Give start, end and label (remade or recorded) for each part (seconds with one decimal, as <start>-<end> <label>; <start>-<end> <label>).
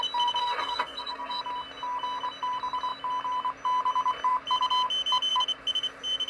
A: 0.0-0.4 recorded; 0.4-1.4 remade; 1.4-6.3 recorded